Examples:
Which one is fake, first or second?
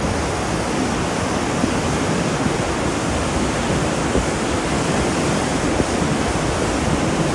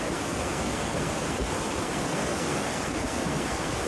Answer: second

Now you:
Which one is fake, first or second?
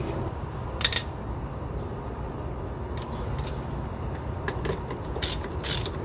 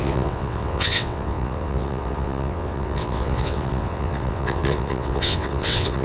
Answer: second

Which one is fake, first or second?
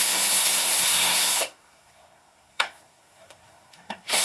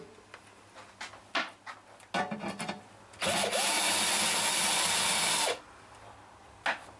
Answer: first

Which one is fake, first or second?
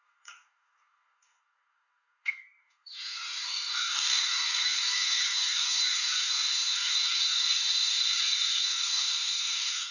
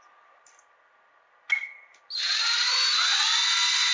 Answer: first